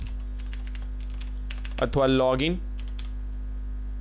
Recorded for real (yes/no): yes